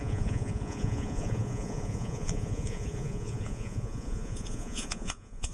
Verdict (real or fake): fake